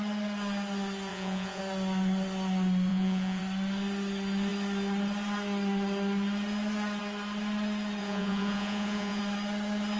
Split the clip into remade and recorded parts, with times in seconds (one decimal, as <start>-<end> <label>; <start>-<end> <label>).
0.0-1.1 recorded; 1.1-1.6 remade; 1.6-2.9 recorded; 2.9-3.4 remade; 3.4-8.0 recorded; 8.0-9.2 remade; 9.2-10.0 recorded